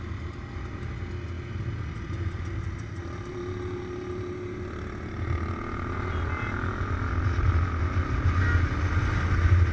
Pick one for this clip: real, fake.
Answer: real